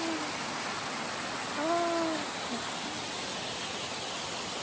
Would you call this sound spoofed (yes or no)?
no